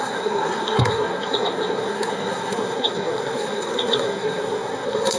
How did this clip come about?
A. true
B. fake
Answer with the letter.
B